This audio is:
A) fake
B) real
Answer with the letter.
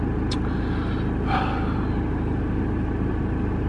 B